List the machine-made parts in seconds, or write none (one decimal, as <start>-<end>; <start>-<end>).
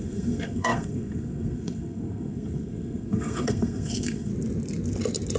0.0-4.3